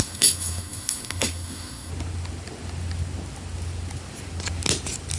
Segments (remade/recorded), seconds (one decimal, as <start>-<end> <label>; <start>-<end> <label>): 0.0-1.9 remade; 1.9-5.2 recorded